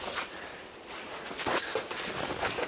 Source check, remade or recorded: recorded